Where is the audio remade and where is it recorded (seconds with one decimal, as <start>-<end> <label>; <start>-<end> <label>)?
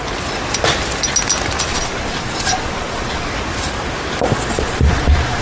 0.0-1.7 recorded; 1.7-3.3 remade; 3.3-4.5 recorded; 4.5-5.4 remade